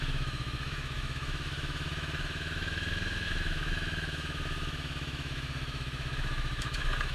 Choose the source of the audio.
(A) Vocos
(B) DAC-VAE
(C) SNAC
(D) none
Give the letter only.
B